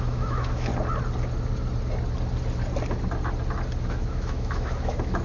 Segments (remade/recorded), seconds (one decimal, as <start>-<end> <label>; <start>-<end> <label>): 0.0-0.7 remade; 0.7-3.8 recorded; 3.8-5.2 remade